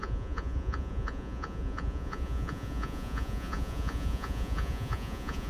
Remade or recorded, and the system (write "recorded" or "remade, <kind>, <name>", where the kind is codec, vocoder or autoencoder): remade, vocoder, Vocos